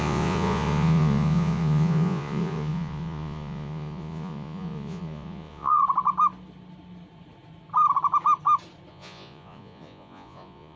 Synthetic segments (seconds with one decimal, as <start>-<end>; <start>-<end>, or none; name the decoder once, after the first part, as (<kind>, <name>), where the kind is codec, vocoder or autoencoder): 0.0-5.8 (vocoder, Vocos); 8.9-10.8